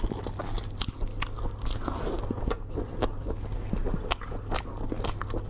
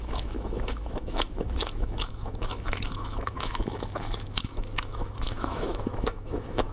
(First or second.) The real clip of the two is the first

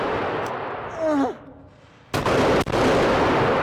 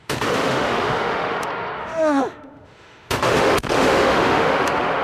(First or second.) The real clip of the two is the first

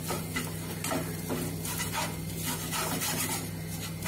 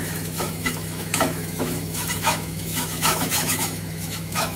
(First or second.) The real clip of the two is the first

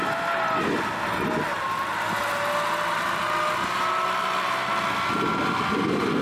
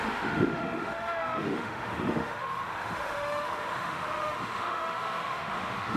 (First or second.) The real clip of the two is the first